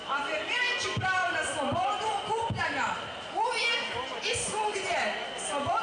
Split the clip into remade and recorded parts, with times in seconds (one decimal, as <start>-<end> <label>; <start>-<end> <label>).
0.0-5.8 recorded